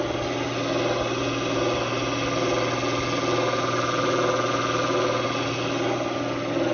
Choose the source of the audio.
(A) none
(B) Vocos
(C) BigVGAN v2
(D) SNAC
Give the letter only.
A